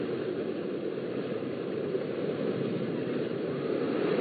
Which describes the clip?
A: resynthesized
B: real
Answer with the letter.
B